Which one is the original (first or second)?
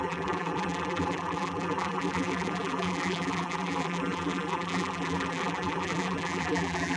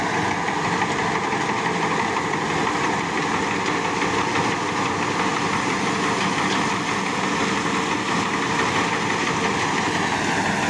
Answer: second